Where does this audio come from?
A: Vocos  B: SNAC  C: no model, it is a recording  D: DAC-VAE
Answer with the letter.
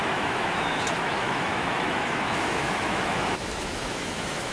D